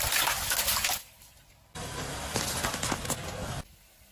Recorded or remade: recorded